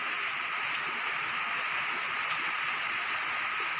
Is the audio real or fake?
real